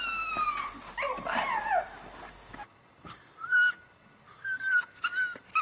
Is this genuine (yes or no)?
yes